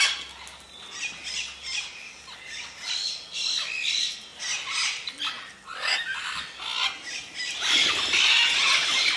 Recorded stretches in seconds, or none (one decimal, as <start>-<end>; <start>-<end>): 0.0-9.2